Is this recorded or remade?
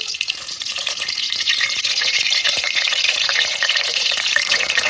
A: remade